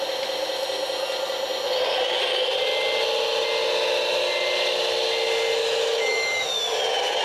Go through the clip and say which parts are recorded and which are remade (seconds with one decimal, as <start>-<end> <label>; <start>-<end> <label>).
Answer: 0.0-5.6 recorded; 5.6-6.5 remade; 6.5-7.2 recorded